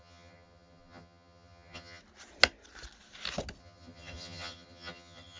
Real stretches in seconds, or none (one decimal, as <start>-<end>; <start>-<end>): 2.0-3.6